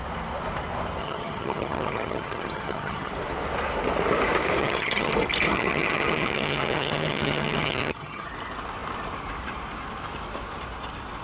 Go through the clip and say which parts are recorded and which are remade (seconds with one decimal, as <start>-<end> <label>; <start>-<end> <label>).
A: 0.0-1.0 recorded; 1.0-3.1 remade; 3.1-4.6 recorded; 4.6-5.1 remade; 5.1-5.5 recorded; 5.5-8.3 remade; 8.3-11.2 recorded